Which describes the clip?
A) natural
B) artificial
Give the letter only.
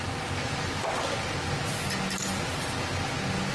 A